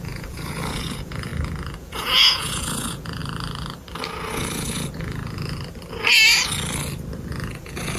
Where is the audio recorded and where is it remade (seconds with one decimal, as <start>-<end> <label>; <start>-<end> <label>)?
0.0-1.3 remade; 1.3-1.8 recorded; 1.8-3.2 remade; 3.2-4.3 recorded; 4.3-5.2 remade; 5.2-7.5 recorded; 7.5-8.0 remade

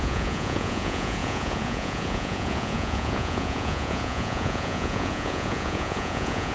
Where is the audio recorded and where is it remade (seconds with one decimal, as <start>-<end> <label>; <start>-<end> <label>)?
0.0-6.5 remade

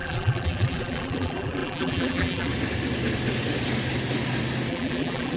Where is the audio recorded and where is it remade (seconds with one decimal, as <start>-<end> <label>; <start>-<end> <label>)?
0.0-2.5 remade; 2.5-4.7 recorded; 4.7-5.4 remade

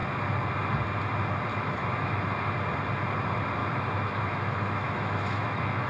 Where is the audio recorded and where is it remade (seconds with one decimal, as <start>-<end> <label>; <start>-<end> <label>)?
0.0-1.5 recorded; 1.5-2.2 remade; 2.2-3.6 recorded; 3.6-5.9 remade

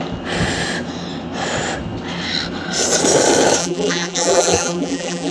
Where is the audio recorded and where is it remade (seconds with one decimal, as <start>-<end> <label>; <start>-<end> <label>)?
0.0-3.6 recorded; 3.6-5.3 remade

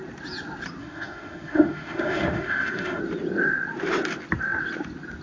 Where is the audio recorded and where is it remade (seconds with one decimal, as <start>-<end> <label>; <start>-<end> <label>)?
0.0-0.8 recorded; 0.8-3.0 remade; 3.0-5.2 recorded